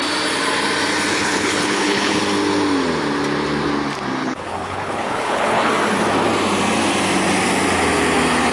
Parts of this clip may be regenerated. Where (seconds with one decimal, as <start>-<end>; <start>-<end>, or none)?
1.1-2.2; 4.2-5.7